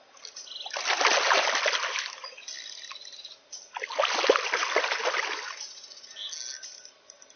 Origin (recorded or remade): recorded